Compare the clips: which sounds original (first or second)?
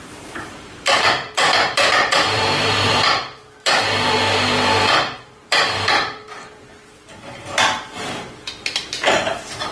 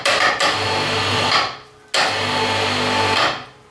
second